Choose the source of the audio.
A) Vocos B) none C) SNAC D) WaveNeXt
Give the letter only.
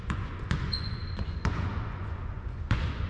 A